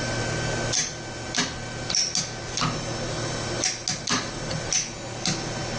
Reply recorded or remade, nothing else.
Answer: recorded